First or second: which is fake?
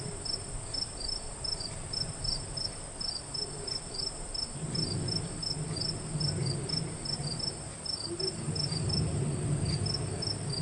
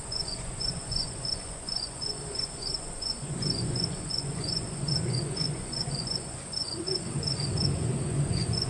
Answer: second